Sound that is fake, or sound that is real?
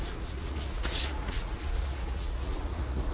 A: fake